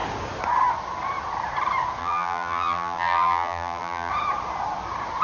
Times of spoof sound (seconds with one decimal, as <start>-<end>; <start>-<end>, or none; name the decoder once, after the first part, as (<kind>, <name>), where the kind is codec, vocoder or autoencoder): 2.0-4.1 (vocoder, BigVGAN v2)